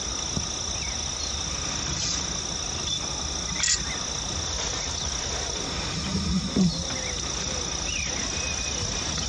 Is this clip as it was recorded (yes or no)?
yes